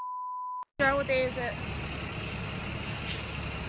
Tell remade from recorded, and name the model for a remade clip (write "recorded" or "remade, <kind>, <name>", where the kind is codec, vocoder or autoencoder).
recorded